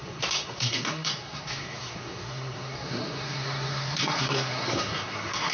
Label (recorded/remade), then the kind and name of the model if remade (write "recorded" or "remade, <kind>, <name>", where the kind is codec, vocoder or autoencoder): remade, codec, SNAC